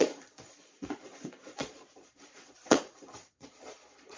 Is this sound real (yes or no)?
no